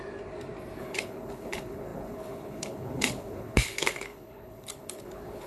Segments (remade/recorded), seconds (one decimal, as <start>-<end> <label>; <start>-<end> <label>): 0.0-0.8 recorded; 0.8-5.5 remade